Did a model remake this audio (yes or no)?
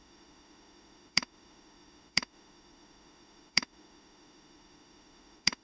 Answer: yes